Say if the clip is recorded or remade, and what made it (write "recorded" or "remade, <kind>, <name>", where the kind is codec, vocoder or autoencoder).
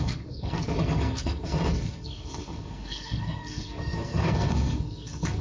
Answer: remade, codec, SNAC